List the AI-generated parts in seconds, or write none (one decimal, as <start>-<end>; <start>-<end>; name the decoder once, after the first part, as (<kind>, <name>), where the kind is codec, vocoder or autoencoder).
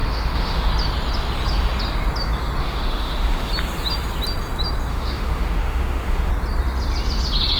0.0-0.7 (autoencoder, DAC-VAE); 2.6-3.5; 4.9-6.3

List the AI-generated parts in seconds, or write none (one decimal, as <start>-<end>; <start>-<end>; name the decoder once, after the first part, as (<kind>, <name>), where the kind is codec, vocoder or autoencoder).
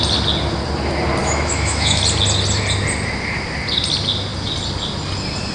1.2-2.0 (autoencoder, DAC-VAE)